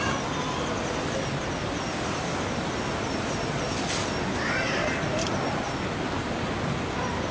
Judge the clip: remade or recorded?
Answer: recorded